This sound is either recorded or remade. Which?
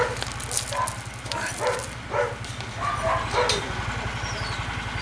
recorded